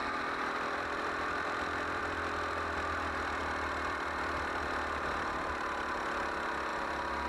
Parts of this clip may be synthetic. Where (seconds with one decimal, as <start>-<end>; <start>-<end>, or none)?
0.0-2.0; 3.4-4.6; 6.7-7.3